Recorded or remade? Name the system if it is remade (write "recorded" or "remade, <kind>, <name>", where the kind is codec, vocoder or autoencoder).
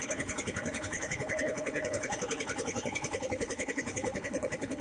remade, codec, HILCodec